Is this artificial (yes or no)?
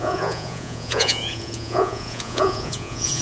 yes